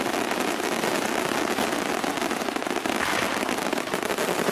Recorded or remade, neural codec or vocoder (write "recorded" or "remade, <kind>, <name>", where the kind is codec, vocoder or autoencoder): remade, vocoder, BigVGAN v2